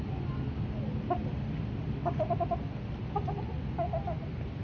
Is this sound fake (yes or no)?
no